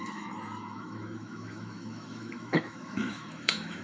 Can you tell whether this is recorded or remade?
remade